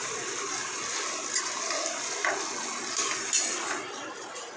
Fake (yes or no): no